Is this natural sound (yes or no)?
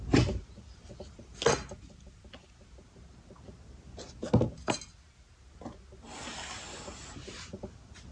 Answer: yes